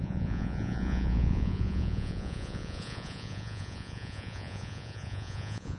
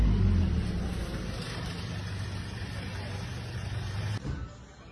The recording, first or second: second